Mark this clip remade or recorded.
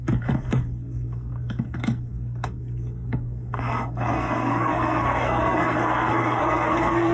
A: remade